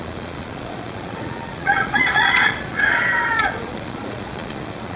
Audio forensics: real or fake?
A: fake